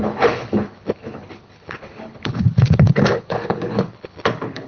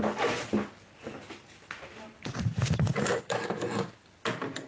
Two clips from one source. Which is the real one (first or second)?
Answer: second